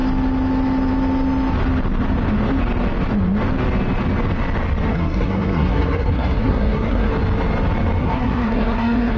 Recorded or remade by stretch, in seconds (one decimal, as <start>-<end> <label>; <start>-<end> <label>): 0.0-4.9 recorded; 4.9-7.1 remade; 7.1-8.0 recorded; 8.0-9.2 remade